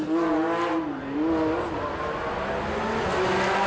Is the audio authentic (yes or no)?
yes